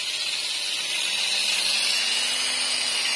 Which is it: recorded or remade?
recorded